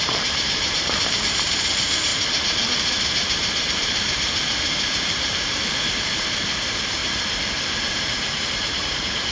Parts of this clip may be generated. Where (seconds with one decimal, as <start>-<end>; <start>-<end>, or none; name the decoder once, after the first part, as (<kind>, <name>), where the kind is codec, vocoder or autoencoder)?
0.0-2.1 (vocoder, BigVGAN v2); 2.7-7.0; 7.9-9.3